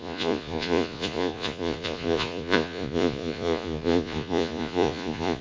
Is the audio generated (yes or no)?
yes